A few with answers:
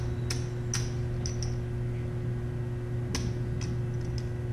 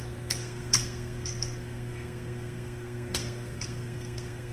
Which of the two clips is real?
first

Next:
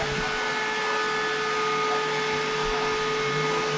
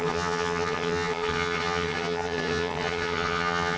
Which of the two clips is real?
first